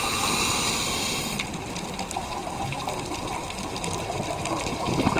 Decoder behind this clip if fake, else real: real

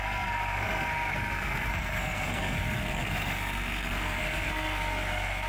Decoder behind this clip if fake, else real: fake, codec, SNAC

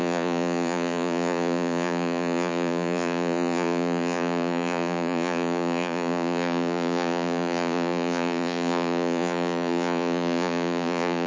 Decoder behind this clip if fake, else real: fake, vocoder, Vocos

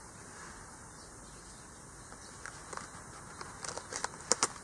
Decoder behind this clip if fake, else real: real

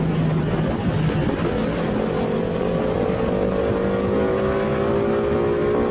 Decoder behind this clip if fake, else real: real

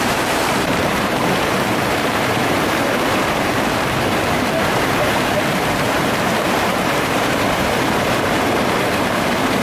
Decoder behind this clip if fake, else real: fake, vocoder, BigVGAN v2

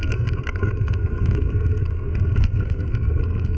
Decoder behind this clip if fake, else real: fake, codec, SNAC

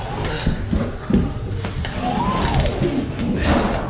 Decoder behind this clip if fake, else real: real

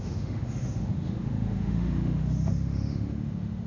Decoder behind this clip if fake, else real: fake, autoencoder, DAC-VAE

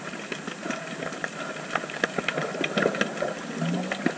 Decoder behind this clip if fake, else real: real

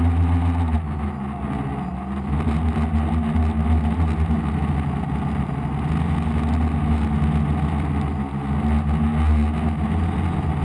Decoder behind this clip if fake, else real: real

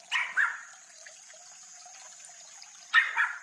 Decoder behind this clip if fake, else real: real